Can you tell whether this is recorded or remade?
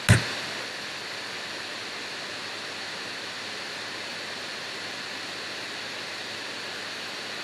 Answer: recorded